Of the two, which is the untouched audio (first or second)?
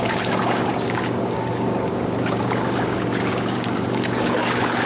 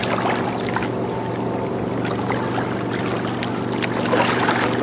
second